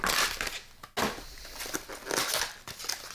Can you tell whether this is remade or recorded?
recorded